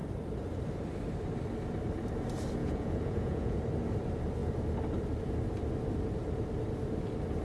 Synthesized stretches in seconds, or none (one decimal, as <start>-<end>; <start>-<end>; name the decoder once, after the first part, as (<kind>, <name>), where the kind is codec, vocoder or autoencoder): 2.6-3.6 (vocoder, Vocos)